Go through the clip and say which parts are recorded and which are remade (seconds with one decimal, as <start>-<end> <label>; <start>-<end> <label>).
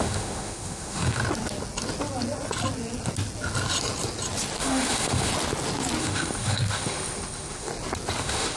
0.0-1.2 remade; 1.2-4.6 recorded; 4.6-5.3 remade; 5.3-6.0 recorded; 6.0-7.7 remade; 7.7-8.2 recorded; 8.2-8.6 remade